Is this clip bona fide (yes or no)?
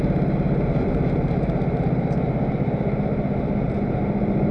yes